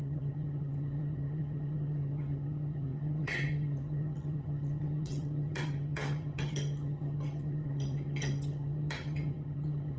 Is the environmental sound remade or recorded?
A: remade